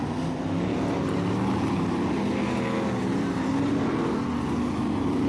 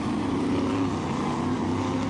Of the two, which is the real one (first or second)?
first